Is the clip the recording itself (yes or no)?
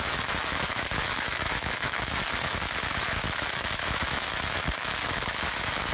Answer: no